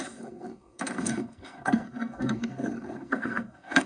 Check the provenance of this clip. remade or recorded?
remade